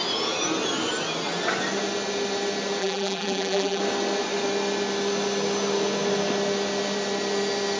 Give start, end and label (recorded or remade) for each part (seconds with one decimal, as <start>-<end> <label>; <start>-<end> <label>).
0.0-2.8 recorded; 2.8-3.8 remade; 3.8-7.8 recorded